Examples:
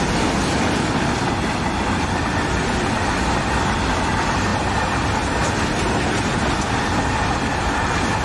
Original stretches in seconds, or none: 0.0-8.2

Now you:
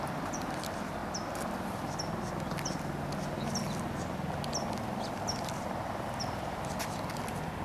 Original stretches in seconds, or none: 1.0-4.7

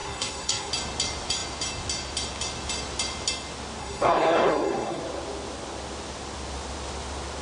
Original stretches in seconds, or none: 0.7-3.8; 5.0-7.4

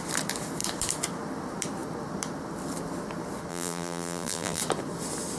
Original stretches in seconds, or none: 0.0-3.5; 4.6-5.4

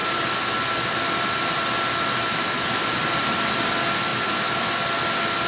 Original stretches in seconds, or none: 0.0-5.5

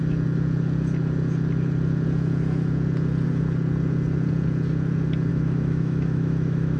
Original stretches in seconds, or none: 0.0-5.3

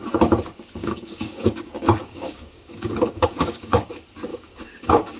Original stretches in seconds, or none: 0.0-0.8; 3.9-4.3